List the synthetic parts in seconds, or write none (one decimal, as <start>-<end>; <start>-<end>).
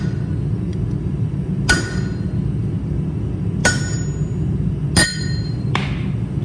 none